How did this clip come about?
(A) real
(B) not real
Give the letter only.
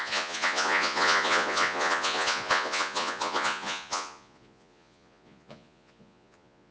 B